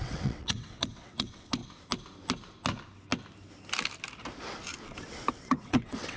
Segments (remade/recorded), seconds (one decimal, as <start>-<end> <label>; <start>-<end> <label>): 0.0-1.6 remade; 1.6-5.3 recorded; 5.3-6.2 remade